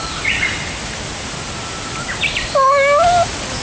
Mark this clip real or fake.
real